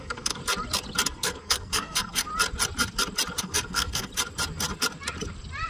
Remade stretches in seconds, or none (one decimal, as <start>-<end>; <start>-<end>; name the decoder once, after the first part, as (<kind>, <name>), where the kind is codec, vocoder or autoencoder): 0.0-0.4 (codec, SNAC); 1.1-2.3; 3.4-4.1